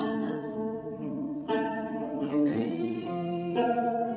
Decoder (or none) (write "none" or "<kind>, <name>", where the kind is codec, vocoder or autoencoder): vocoder, Vocos